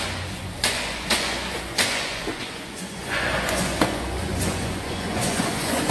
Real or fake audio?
fake